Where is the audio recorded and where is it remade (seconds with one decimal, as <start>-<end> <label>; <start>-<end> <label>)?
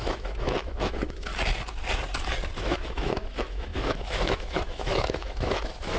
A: 0.0-1.3 remade; 1.3-2.6 recorded; 2.6-6.0 remade